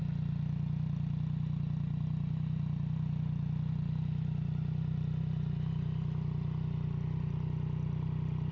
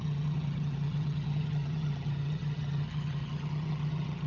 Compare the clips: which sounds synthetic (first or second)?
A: second